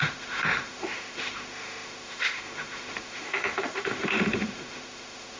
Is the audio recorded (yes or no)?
no